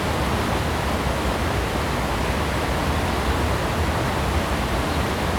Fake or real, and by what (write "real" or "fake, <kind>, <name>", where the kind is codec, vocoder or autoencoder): real